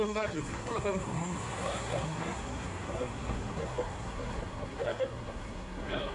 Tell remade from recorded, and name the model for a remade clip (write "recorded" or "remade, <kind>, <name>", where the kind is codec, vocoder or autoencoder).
remade, codec, SNAC